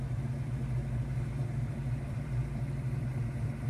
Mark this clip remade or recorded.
remade